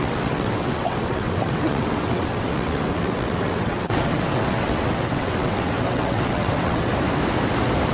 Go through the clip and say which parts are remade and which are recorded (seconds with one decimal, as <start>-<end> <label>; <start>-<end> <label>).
0.0-6.9 remade; 6.9-7.9 recorded